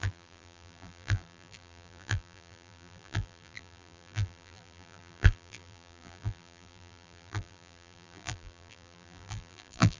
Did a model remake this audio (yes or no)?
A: yes